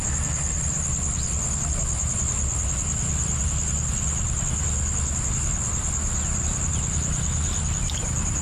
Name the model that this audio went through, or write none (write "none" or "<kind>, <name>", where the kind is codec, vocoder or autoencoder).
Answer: none